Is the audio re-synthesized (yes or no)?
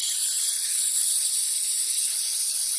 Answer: yes